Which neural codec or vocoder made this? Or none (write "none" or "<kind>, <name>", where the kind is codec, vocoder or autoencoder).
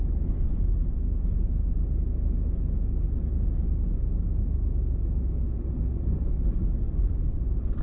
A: none